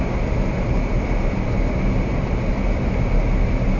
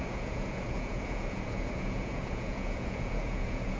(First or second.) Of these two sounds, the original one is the first